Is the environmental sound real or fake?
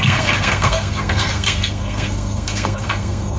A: fake